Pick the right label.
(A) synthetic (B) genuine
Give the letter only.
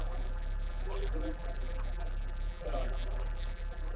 A